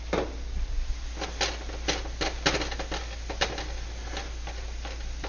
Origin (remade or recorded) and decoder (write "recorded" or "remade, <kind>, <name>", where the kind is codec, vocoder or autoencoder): recorded